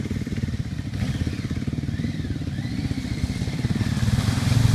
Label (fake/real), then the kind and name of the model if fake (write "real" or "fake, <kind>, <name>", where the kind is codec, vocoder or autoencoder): fake, vocoder, BigVGAN v2